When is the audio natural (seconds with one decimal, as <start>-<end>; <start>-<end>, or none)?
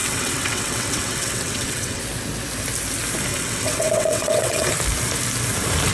2.0-3.3; 4.7-5.9